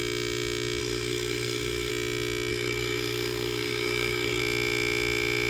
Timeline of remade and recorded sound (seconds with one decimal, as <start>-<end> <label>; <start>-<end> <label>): 0.0-0.8 recorded; 0.8-1.9 remade; 1.9-2.5 recorded; 2.5-4.4 remade; 4.4-5.5 recorded